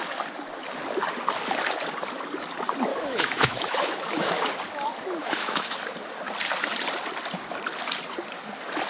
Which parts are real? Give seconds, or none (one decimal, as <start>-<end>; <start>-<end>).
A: 0.0-2.9; 4.5-5.2; 5.8-8.9